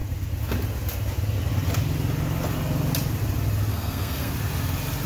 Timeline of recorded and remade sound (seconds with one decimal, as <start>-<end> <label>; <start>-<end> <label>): 0.0-3.7 recorded; 3.7-4.3 remade; 4.3-5.1 recorded